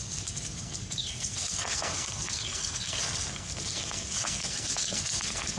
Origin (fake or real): fake